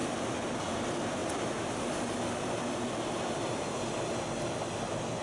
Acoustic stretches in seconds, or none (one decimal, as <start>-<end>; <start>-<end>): 0.0-5.2